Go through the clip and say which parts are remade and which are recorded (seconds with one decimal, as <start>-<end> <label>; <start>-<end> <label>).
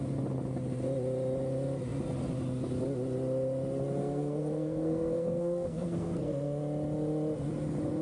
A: 0.0-4.0 recorded; 4.0-6.6 remade; 6.6-8.0 recorded